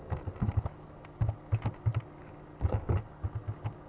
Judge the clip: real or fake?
real